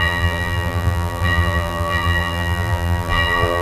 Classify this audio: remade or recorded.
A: remade